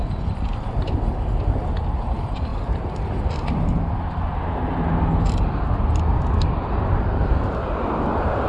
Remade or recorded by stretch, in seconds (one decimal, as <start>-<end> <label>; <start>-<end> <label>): 0.0-2.5 remade; 2.5-7.0 recorded; 7.0-8.5 remade